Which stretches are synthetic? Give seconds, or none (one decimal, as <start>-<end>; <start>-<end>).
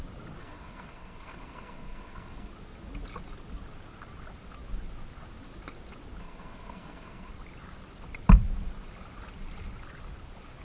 0.4-2.5; 6.2-7.3